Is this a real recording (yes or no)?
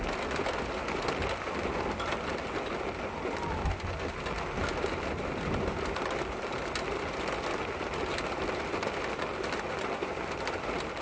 yes